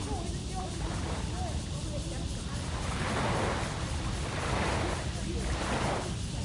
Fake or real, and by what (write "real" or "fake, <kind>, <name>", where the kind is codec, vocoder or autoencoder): real